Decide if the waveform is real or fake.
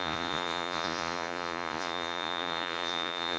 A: fake